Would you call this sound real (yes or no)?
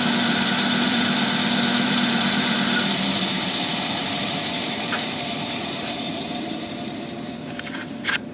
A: no